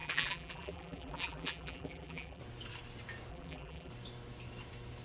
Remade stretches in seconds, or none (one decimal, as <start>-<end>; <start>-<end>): 0.0-2.4; 3.3-3.9

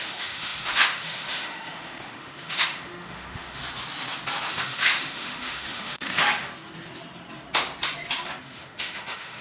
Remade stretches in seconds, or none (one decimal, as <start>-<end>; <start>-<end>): 0.0-3.6; 4.5-6.5; 8.4-9.4

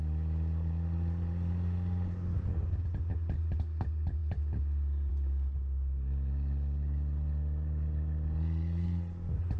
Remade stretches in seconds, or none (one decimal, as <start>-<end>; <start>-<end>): none

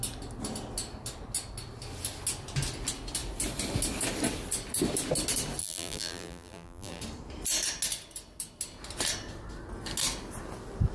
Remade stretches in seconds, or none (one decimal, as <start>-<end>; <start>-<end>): 5.6-7.0

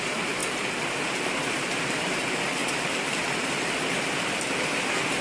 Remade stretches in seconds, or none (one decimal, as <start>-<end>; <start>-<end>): none

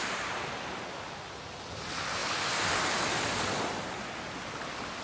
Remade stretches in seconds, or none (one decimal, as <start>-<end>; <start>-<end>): none

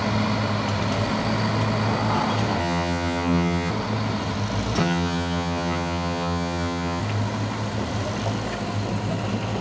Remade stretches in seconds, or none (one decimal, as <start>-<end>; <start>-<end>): 2.6-3.7; 4.8-7.0